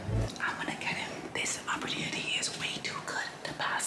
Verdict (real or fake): real